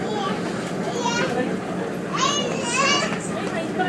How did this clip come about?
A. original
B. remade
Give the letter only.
A